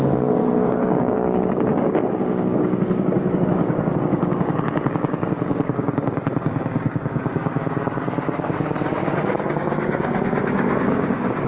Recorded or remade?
remade